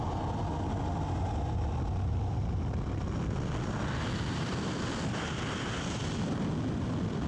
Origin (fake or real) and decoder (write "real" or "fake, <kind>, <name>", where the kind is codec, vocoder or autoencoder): real